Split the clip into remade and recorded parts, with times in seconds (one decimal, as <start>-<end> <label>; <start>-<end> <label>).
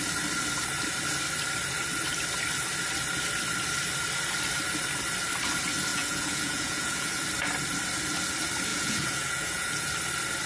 0.0-5.9 recorded; 5.9-7.2 remade; 7.2-8.7 recorded; 8.7-9.9 remade; 9.9-10.5 recorded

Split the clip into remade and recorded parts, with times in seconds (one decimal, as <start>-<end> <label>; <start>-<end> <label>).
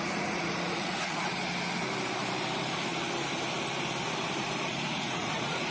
0.0-1.3 remade; 1.3-4.7 recorded; 4.7-5.7 remade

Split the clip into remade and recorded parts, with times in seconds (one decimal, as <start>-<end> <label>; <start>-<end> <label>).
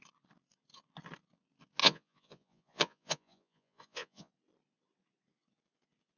0.0-1.8 recorded; 1.8-4.3 remade; 4.3-6.2 recorded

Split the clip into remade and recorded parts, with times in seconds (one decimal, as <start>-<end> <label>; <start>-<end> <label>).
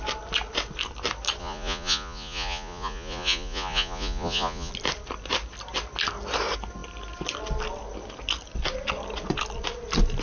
0.0-1.4 recorded; 1.4-4.7 remade; 4.7-10.2 recorded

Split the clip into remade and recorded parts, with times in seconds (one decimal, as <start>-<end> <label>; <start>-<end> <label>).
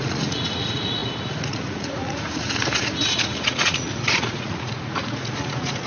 0.0-5.9 remade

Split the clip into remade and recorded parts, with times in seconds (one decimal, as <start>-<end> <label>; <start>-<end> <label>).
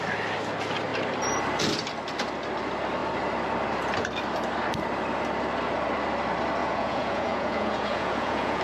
0.0-6.6 recorded; 6.6-8.6 remade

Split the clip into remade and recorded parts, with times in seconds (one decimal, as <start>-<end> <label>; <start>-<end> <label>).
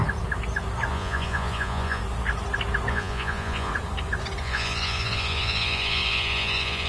0.0-0.9 recorded; 0.9-2.0 remade; 2.0-2.9 recorded; 2.9-3.7 remade; 3.7-4.4 recorded; 4.4-6.9 remade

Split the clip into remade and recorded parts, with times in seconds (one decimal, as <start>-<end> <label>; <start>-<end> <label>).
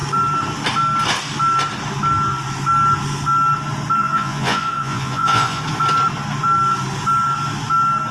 0.0-4.0 recorded; 4.0-5.6 remade; 5.6-8.1 recorded